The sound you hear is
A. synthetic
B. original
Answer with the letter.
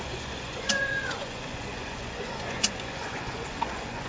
A